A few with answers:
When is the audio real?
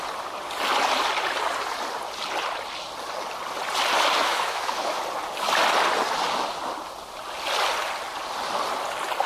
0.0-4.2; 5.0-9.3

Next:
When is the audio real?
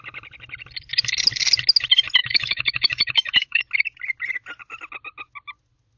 0.0-2.2; 3.6-6.0